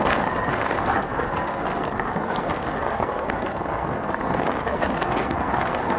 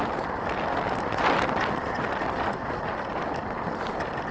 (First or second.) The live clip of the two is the second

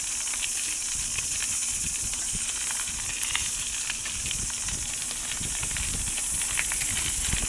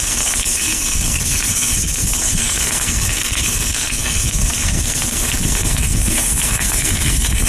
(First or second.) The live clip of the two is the first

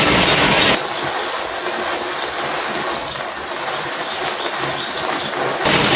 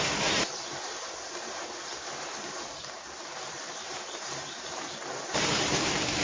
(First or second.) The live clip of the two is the first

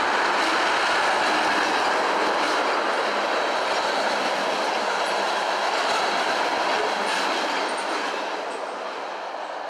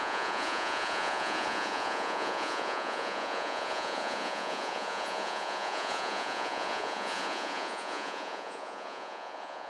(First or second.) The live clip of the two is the first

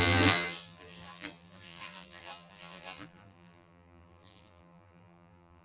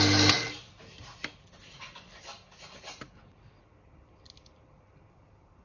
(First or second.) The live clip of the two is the second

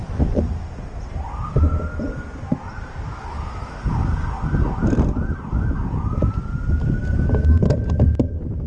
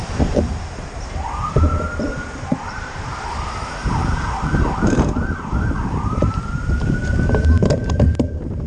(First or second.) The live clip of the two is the first